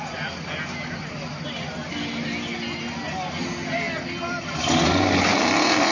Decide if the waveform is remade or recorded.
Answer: recorded